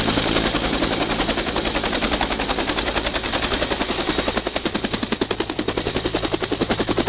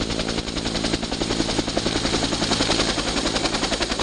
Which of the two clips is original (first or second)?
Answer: second